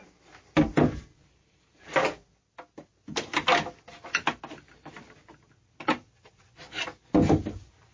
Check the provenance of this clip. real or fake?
real